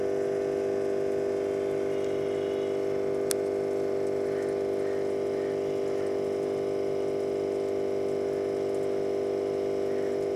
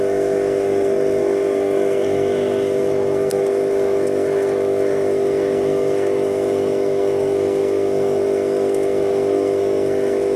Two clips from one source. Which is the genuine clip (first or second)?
first